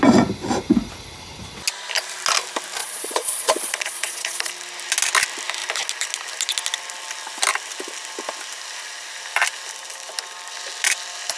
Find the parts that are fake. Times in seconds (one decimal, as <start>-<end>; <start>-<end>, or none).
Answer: 2.8-4.5